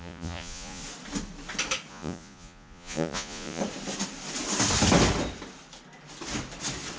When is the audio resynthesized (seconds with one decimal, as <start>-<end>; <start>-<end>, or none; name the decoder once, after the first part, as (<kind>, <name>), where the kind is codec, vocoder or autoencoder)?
0.0-0.8 (vocoder, Vocos); 1.9-3.6